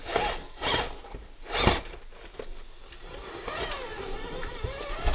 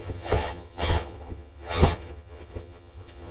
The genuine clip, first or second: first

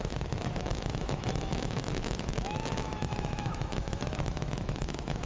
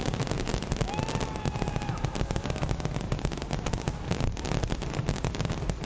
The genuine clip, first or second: second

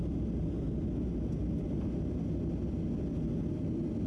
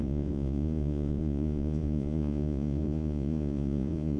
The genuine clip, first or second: first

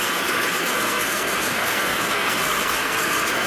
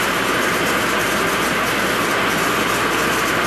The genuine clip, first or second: second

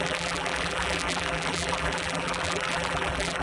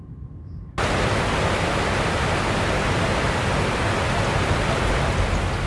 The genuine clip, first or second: second